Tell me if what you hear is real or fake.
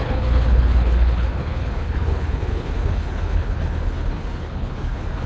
fake